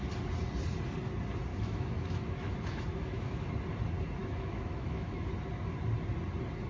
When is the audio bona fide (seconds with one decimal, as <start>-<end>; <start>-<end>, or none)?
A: 0.0-1.5; 3.5-4.2; 5.3-6.7